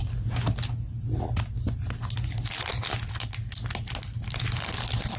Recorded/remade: recorded